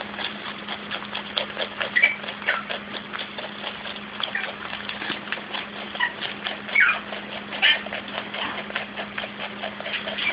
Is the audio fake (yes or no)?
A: no